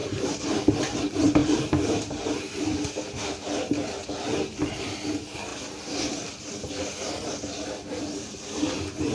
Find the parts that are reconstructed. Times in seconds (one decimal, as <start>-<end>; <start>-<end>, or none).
0.0-0.8